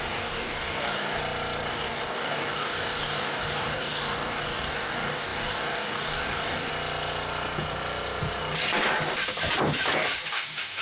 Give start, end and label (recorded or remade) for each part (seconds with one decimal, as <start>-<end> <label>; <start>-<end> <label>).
0.0-1.2 remade; 1.2-1.7 recorded; 1.7-6.7 remade; 6.7-10.3 recorded; 10.3-10.8 remade